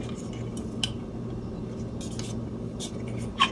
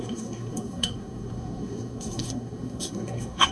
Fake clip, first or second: second